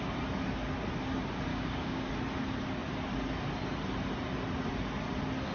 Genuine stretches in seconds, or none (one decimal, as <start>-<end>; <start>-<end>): 0.0-1.5; 2.1-5.5